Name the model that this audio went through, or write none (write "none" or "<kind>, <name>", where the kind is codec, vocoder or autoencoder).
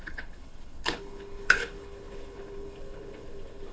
codec, HILCodec